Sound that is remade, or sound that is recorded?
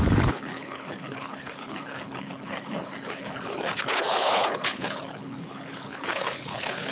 remade